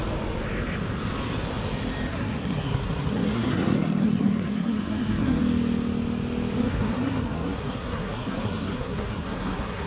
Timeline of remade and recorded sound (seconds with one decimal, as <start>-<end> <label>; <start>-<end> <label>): 0.0-2.1 recorded; 2.1-5.4 remade; 5.4-6.6 recorded; 6.6-9.9 remade